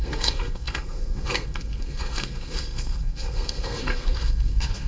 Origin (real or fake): fake